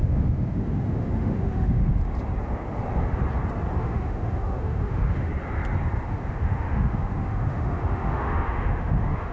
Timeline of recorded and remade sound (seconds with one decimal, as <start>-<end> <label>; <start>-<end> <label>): 0.0-1.9 remade; 1.9-3.8 recorded; 3.8-5.3 remade; 5.3-6.1 recorded; 6.1-9.3 remade